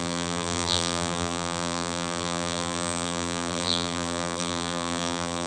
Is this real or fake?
fake